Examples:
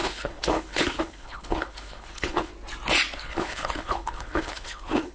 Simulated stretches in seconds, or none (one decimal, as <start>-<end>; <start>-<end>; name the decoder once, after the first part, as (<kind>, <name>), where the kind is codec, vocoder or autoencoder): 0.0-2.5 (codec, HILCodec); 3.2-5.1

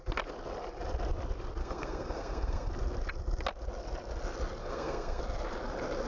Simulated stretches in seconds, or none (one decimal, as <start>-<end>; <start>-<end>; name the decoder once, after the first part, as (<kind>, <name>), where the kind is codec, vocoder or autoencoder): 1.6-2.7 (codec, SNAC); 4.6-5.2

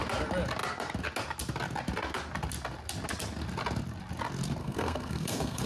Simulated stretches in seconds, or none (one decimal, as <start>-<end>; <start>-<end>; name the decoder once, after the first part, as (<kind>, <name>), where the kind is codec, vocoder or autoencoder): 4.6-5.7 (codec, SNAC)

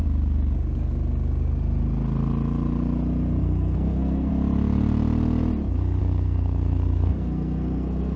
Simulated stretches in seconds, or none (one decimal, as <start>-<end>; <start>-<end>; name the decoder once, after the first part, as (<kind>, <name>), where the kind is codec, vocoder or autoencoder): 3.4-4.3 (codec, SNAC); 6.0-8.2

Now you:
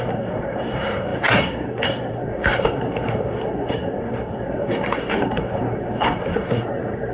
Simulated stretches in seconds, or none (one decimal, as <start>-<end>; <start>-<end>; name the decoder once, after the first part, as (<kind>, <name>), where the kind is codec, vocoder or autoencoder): 0.0-7.1 (codec, SNAC)

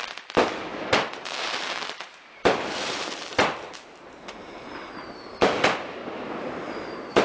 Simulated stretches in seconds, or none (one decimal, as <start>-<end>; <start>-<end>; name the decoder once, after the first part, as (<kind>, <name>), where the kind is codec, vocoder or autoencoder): 0.0-0.7 (vocoder, BigVGAN v2); 1.4-6.0; 6.6-7.2